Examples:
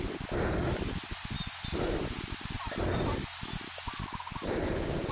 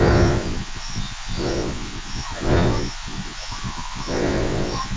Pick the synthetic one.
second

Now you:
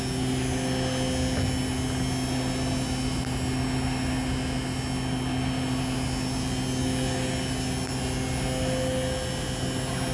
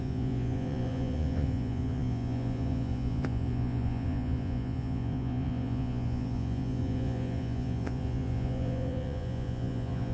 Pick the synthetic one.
second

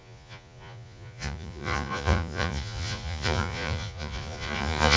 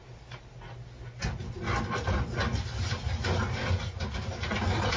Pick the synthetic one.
first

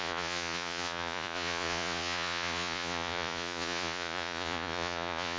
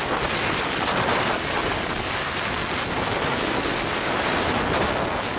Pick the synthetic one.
first